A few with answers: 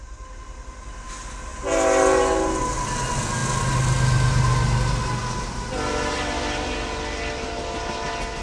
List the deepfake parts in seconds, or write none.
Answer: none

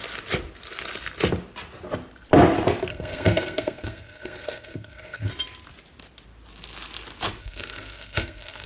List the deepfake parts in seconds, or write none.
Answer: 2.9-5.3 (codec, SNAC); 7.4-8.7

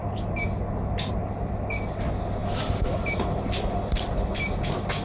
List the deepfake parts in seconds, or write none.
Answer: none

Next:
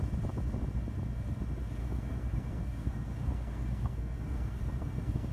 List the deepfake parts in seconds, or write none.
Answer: 1.8-5.3 (codec, SNAC)

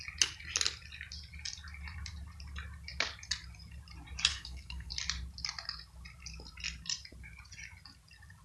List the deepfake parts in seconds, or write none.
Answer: 4.3-4.9 (codec, SNAC)